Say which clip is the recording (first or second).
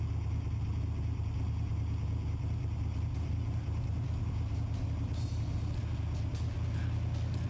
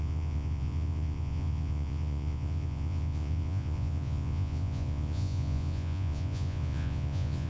first